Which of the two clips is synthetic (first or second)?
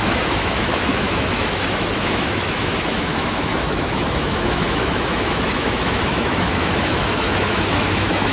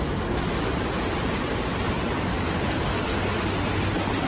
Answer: first